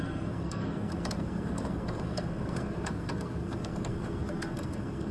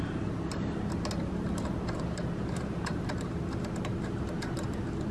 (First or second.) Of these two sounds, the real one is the second